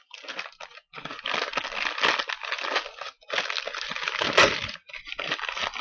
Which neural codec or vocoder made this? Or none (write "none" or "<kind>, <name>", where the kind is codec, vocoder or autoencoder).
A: none